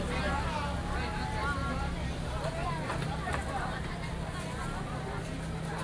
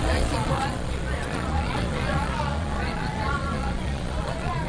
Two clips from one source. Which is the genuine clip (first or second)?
first